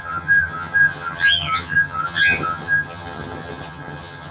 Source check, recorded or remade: remade